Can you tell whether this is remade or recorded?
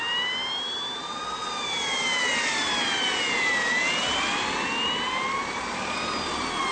recorded